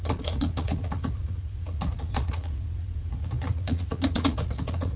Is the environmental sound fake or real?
fake